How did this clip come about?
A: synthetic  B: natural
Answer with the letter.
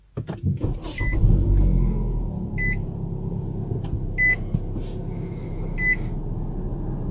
B